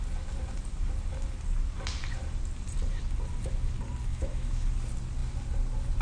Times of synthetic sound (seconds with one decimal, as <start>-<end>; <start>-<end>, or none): 4.1-4.6